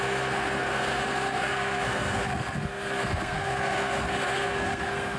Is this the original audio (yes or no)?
no